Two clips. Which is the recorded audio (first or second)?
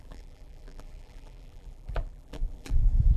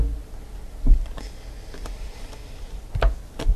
second